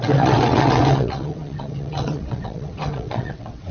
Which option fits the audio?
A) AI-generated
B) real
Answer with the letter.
A